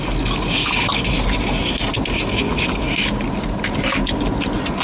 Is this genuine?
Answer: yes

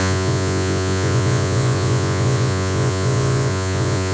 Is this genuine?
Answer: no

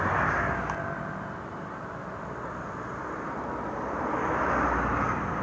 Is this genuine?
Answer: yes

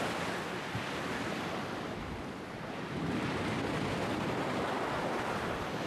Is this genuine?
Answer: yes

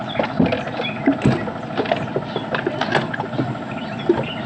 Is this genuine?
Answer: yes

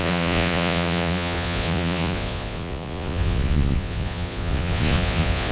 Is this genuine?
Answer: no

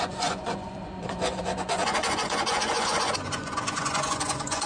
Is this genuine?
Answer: no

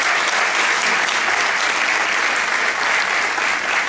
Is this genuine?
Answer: yes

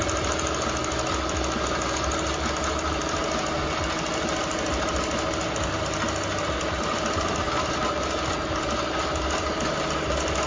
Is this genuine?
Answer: yes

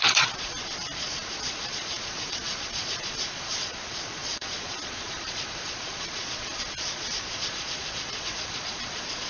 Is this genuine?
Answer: no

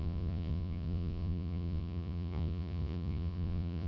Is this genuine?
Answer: no